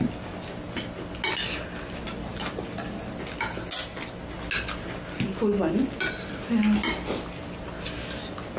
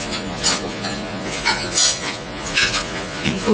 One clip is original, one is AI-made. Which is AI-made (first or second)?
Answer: second